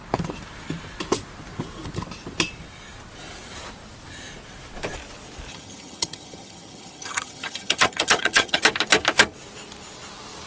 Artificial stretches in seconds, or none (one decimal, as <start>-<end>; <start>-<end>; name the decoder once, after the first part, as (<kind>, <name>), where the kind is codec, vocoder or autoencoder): 5.5-8.6 (vocoder, HiFi-GAN)